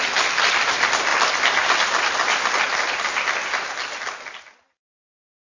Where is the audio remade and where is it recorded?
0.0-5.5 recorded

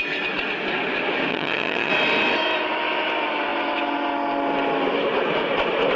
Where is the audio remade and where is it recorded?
0.0-1.3 recorded; 1.3-1.9 remade; 1.9-6.0 recorded

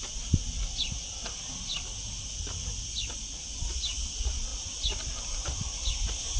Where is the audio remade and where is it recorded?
0.0-6.4 recorded